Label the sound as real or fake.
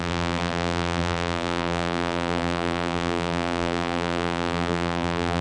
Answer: fake